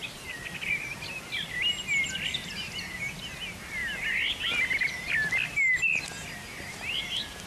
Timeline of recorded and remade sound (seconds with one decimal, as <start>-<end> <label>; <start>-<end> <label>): 0.0-7.5 recorded